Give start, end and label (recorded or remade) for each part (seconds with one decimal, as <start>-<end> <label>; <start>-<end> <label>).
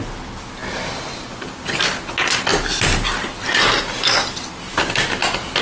0.0-5.6 recorded